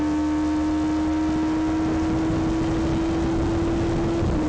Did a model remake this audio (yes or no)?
no